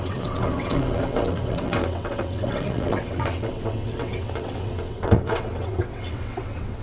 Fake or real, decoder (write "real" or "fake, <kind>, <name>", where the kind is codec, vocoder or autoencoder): fake, vocoder, WaveNeXt